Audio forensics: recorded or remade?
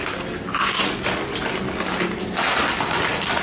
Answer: recorded